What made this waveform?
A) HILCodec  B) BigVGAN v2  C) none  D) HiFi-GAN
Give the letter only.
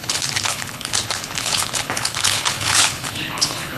A